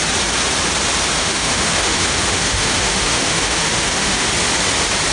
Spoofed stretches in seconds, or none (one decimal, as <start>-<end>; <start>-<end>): 1.2-4.3